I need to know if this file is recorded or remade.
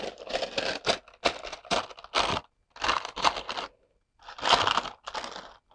recorded